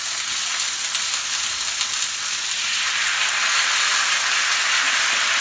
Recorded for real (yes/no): yes